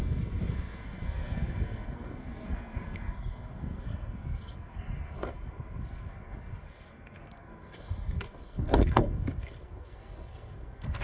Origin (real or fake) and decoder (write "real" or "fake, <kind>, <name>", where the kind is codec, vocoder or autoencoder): fake, codec, SNAC